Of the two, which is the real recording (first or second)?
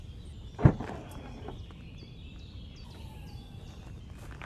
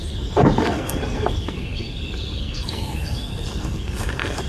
first